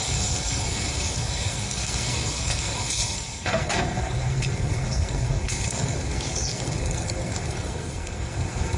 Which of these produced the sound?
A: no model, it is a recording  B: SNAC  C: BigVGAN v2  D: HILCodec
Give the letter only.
B